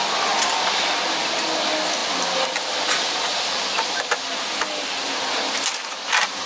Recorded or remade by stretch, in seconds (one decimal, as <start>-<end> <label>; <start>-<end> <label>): 0.0-6.5 recorded